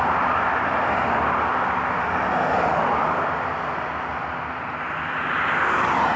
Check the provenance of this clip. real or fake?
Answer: real